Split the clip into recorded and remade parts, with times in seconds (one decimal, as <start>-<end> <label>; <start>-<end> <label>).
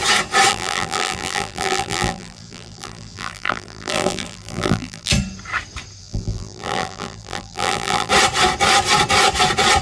0.0-0.5 recorded; 0.5-5.1 remade; 5.1-6.0 recorded; 6.0-8.1 remade; 8.1-9.8 recorded